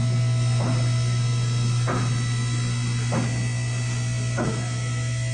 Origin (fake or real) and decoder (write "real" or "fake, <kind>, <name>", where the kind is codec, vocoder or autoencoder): real